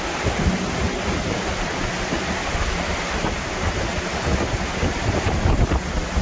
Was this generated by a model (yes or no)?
no